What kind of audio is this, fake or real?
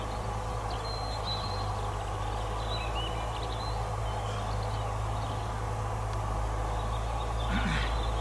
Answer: real